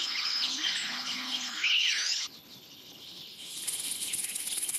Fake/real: fake